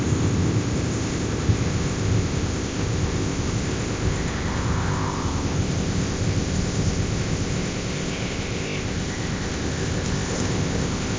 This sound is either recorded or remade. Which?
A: remade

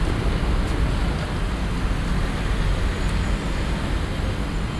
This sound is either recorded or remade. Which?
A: recorded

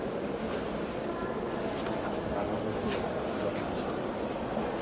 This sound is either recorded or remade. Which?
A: recorded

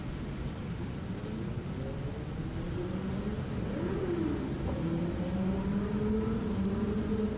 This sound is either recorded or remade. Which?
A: recorded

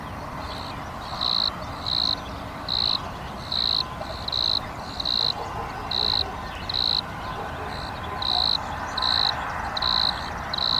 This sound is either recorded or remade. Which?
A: recorded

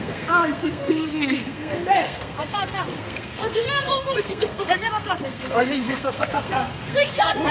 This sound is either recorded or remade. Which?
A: remade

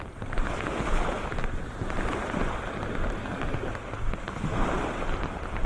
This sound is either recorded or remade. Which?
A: recorded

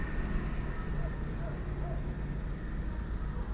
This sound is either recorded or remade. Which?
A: recorded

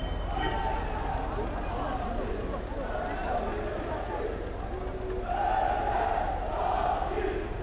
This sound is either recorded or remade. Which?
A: recorded